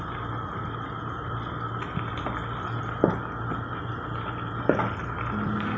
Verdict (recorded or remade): recorded